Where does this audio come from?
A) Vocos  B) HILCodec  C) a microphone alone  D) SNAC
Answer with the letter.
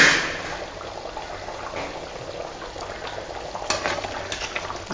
C